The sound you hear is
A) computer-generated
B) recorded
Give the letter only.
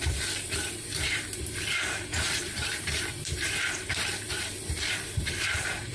A